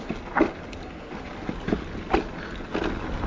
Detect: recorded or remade recorded